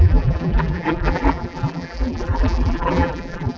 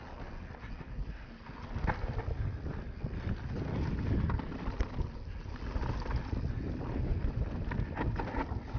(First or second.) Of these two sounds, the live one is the second